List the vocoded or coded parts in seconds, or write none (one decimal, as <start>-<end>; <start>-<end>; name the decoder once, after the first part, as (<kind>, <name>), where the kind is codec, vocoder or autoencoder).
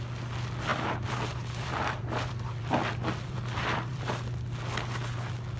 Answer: 0.7-4.1 (vocoder, BigVGAN v2)